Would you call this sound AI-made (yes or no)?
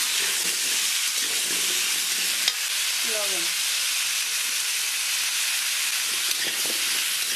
no